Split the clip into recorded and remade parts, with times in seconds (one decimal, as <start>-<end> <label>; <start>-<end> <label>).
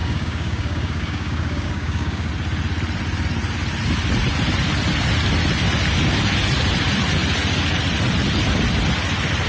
0.0-2.3 remade; 2.3-9.5 recorded